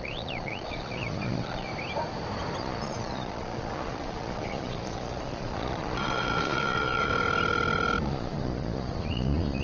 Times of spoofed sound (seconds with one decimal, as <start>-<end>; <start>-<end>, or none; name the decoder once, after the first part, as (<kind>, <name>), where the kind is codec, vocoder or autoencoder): 0.0-1.7 (vocoder, Vocos); 2.6-7.1; 8.0-9.6